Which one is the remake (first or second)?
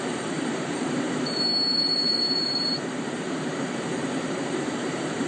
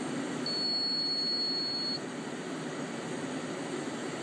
first